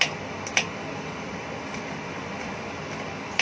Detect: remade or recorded recorded